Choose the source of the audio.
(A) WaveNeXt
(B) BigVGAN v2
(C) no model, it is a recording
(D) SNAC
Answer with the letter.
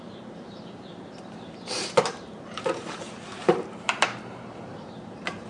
B